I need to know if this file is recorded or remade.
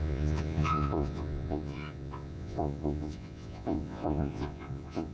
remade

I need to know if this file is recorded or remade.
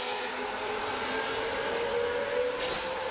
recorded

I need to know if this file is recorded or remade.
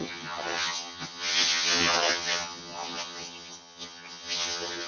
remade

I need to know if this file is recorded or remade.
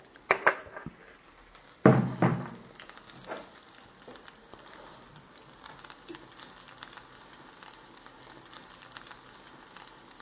recorded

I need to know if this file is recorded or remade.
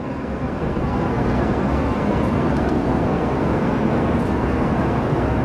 remade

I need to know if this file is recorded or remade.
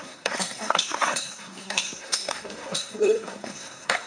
remade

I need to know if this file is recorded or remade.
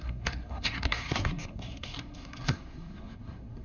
remade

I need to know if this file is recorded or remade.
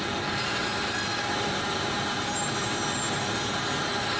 recorded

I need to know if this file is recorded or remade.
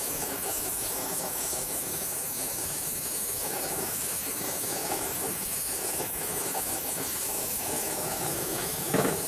remade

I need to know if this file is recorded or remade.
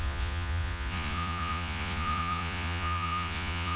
remade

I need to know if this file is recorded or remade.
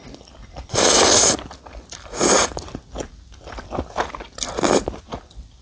recorded